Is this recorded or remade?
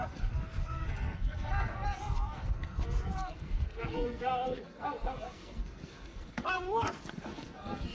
remade